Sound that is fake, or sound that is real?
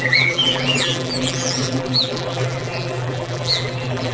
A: fake